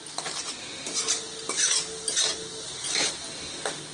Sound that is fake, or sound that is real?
real